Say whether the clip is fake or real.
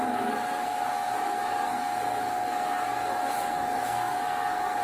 fake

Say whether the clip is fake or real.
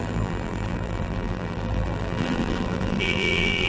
fake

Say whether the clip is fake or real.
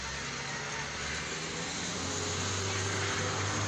real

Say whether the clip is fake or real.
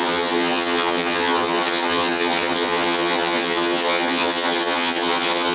fake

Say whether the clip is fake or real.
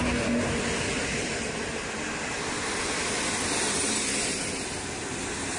real